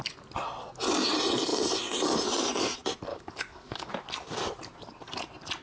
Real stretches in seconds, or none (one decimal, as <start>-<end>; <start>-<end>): 0.0-3.1; 3.9-5.6